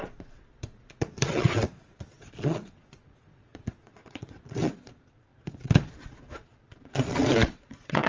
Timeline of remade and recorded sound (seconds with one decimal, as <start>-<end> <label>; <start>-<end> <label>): 0.0-8.1 remade